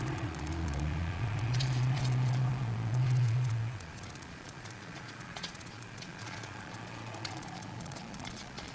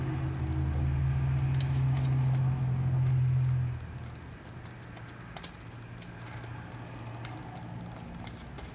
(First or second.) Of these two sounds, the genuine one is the second